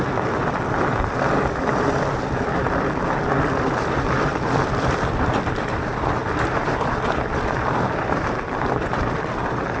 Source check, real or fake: fake